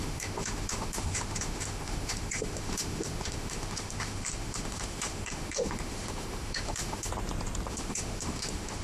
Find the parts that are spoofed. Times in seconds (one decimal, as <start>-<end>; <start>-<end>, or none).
0.0-7.1; 7.7-8.8